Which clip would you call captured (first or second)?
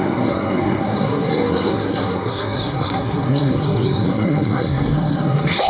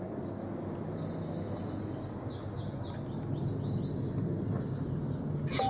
second